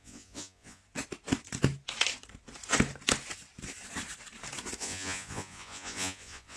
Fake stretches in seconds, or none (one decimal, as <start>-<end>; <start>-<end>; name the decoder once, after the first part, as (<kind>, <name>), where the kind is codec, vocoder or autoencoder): 0.0-0.8 (vocoder, Vocos); 4.8-6.6